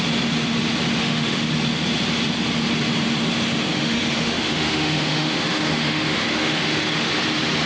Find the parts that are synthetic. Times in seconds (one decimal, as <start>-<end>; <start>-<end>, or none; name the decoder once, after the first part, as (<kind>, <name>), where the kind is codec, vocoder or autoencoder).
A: 1.0-1.5 (autoencoder, DAC-VAE); 3.7-7.1